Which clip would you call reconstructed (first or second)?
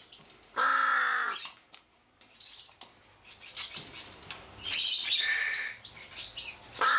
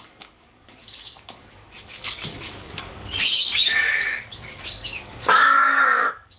second